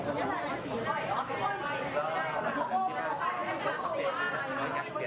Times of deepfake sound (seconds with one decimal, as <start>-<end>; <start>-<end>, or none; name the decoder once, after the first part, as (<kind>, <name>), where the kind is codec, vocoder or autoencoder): none